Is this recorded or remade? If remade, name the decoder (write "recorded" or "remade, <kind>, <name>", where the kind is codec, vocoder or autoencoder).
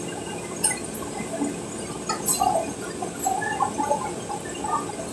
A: recorded